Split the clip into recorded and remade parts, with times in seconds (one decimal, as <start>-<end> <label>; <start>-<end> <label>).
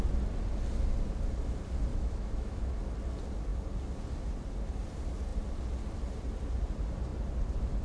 0.0-1.9 recorded; 1.9-2.7 remade; 2.7-7.8 recorded